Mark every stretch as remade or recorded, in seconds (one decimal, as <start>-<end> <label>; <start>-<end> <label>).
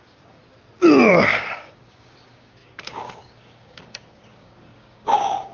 0.0-0.4 remade; 0.4-1.1 recorded; 1.1-5.5 remade